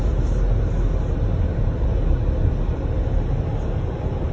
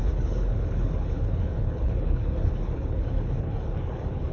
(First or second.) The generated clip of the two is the second